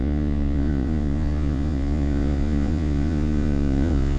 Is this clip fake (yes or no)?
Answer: yes